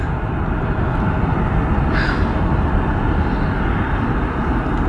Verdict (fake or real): real